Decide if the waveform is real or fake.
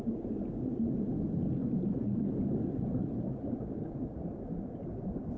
real